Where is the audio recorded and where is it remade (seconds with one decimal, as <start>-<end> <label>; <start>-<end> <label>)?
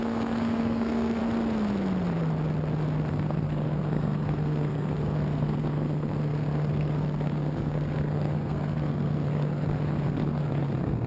0.0-1.2 remade; 1.2-3.1 recorded; 3.1-11.1 remade